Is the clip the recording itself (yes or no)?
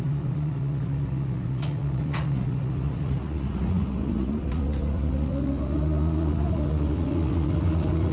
no